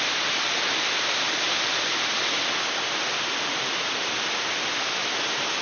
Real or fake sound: real